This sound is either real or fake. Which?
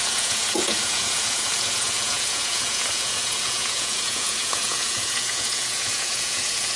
fake